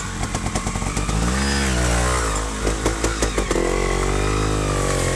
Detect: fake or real real